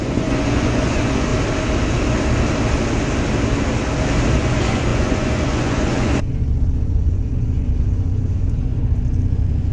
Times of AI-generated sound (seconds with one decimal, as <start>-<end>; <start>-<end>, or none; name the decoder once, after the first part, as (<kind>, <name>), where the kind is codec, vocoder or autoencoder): 0.0-1.3 (vocoder, Vocos); 4.4-9.7